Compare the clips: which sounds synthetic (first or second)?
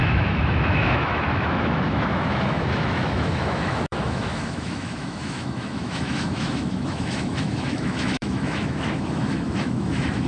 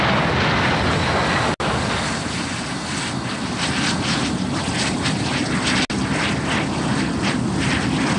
first